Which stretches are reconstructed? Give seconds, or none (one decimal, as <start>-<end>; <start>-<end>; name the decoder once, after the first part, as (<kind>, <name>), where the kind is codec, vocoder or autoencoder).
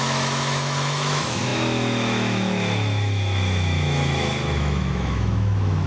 0.0-5.9 (autoencoder, DAC-VAE)